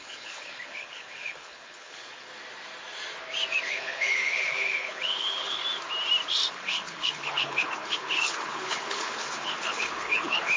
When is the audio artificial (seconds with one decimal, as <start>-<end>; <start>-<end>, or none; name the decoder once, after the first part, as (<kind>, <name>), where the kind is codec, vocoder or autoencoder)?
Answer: 0.0-2.3 (codec, HILCodec); 3.6-5.6; 6.5-10.6